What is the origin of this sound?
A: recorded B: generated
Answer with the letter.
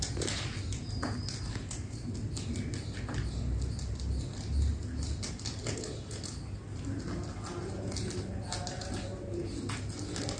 A